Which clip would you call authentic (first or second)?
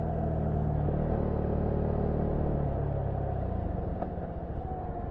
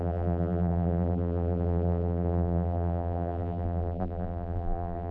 first